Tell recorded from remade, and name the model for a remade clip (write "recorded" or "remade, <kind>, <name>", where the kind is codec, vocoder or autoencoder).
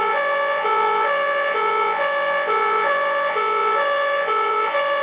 remade, vocoder, Vocos